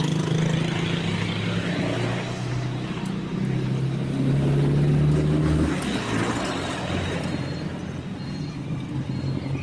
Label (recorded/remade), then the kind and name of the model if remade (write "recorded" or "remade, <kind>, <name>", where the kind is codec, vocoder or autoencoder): recorded